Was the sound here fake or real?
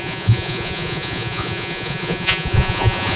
fake